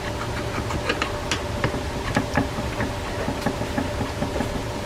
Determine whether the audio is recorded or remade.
recorded